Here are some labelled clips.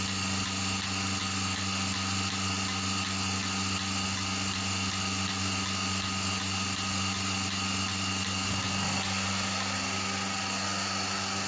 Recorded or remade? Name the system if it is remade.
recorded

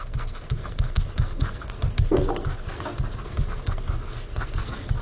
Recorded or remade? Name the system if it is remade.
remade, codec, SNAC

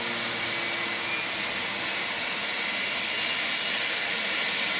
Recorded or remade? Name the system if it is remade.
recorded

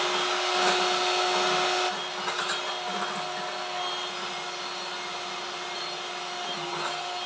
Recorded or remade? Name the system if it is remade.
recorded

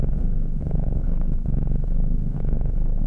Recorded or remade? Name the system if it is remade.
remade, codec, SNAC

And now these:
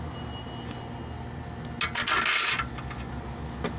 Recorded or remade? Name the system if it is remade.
recorded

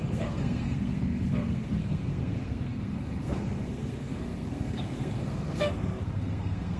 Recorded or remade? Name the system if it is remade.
remade, codec, SNAC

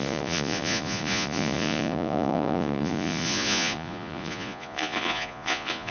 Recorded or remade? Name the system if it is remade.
remade, vocoder, Vocos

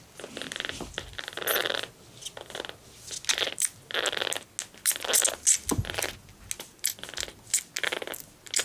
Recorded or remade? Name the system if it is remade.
recorded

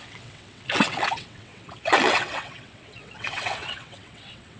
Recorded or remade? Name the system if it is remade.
remade, vocoder, WaveNeXt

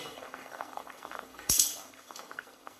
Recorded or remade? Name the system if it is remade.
remade, codec, SNAC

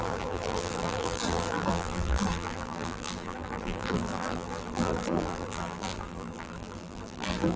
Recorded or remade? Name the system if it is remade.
remade, vocoder, BigVGAN v2